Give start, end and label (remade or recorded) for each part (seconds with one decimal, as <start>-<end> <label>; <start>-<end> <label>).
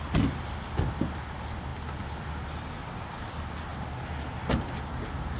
0.0-5.4 recorded